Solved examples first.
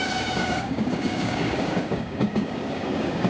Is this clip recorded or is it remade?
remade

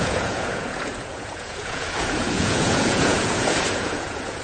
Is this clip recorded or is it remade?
remade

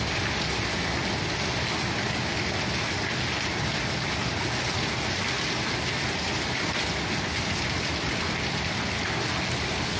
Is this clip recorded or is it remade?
recorded